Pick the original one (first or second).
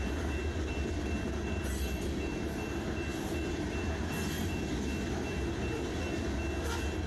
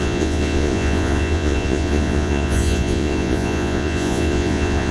first